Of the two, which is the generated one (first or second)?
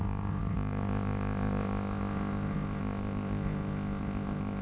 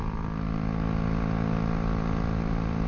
first